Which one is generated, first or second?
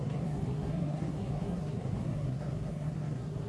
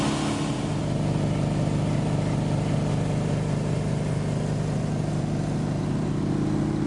first